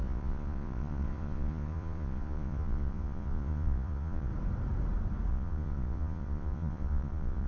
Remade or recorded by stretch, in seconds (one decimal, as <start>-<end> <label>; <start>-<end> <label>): 0.0-4.3 remade; 4.3-5.3 recorded; 5.3-7.5 remade